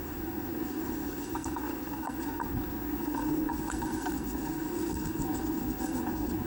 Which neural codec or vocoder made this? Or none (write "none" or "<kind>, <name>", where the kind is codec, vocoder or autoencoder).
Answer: codec, SNAC